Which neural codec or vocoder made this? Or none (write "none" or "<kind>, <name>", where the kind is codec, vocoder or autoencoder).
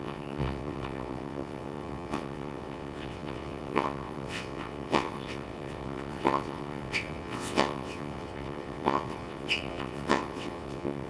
vocoder, WaveNeXt